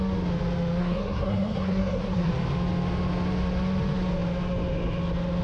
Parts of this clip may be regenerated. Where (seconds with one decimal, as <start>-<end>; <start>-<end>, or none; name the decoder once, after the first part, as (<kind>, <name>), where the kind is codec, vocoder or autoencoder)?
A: 0.8-2.3 (codec, SNAC)